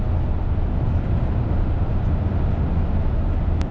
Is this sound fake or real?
real